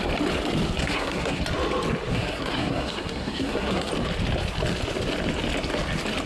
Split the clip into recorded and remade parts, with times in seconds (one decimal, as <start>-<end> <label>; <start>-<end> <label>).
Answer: 0.0-0.8 recorded; 0.8-1.4 remade; 1.4-2.1 recorded; 2.1-3.9 remade; 3.9-6.3 recorded